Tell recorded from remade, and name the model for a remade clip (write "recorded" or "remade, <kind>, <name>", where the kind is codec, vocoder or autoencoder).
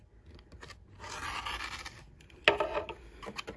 recorded